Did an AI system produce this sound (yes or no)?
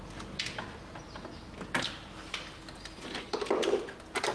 no